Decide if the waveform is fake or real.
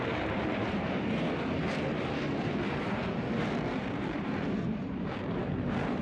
fake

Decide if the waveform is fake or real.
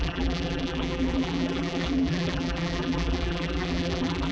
fake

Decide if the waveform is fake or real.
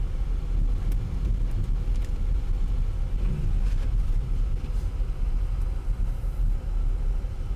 real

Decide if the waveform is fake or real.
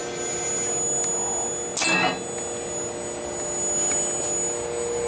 real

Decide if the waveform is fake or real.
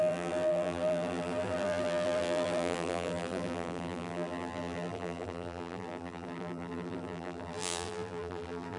fake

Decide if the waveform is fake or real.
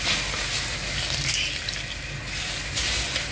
real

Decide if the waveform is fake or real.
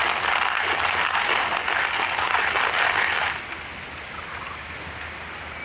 real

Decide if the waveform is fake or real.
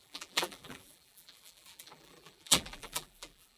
fake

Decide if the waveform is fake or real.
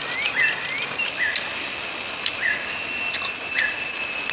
real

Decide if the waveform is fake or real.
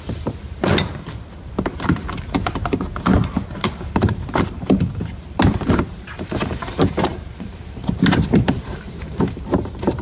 fake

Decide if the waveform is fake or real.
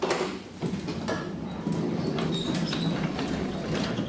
fake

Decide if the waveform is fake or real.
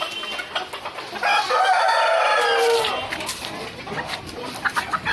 real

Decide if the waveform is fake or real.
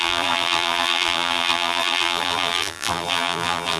fake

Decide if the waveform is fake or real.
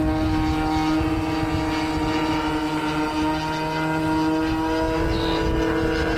real